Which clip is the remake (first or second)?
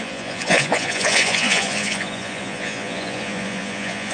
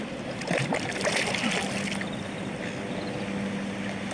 first